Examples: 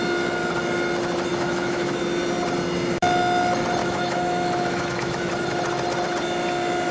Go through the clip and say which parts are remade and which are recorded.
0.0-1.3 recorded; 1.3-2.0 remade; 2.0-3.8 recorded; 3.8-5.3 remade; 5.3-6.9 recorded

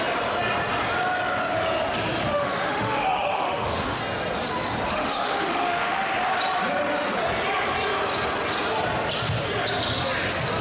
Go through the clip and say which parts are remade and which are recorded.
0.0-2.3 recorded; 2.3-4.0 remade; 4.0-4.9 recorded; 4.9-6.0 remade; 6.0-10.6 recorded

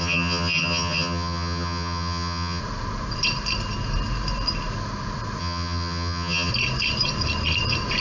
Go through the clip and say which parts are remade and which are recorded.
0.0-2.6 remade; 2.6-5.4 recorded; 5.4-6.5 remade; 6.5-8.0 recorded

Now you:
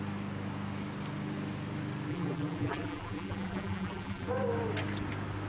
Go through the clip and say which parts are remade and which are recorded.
0.0-2.1 recorded; 2.1-4.3 remade; 4.3-5.5 recorded